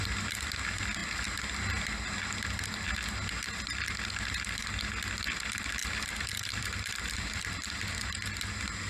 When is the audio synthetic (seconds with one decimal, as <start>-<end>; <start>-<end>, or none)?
5.8-8.0